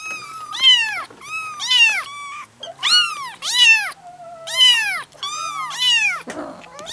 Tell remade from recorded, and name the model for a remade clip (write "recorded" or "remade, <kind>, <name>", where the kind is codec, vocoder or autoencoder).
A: recorded